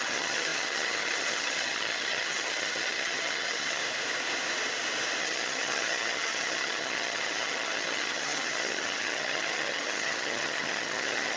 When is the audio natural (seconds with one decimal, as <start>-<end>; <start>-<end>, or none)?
3.8-5.2